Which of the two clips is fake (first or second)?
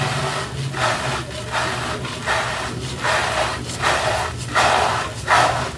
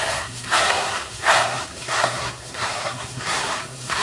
second